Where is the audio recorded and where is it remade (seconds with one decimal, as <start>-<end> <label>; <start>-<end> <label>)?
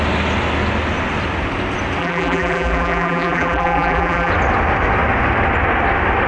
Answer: 0.0-2.0 recorded; 2.0-4.3 remade; 4.3-6.3 recorded